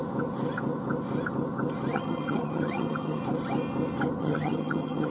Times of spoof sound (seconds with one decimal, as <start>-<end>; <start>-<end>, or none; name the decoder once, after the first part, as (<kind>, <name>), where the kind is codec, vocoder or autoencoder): 1.9-3.2 (vocoder, HiFi-GAN); 4.2-5.1